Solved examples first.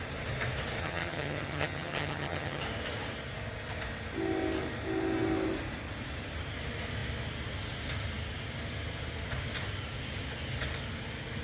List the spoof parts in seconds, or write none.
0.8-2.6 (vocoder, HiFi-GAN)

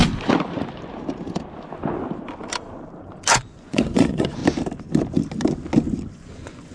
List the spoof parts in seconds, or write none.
3.3-4.4 (vocoder, Vocos); 6.1-6.7

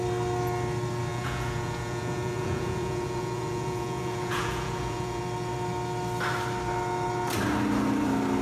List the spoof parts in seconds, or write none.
1.1-5.2 (vocoder, Vocos)

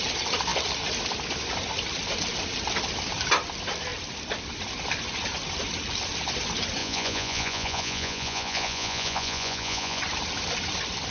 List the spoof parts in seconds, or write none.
6.8-10.0 (vocoder, Vocos)

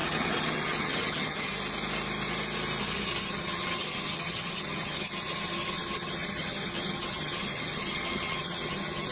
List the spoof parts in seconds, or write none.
0.0-1.5 (vocoder, HiFi-GAN); 2.8-9.1

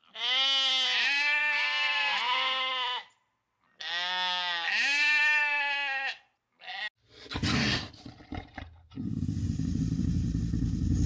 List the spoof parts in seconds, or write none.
8.3-10.4 (vocoder, BigVGAN v2)